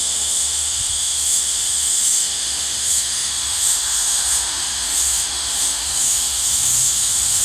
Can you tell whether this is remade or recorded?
remade